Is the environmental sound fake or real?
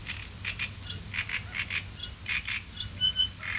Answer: real